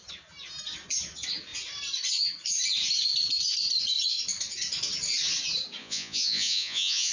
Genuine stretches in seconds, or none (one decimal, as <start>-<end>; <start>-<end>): 0.0-5.8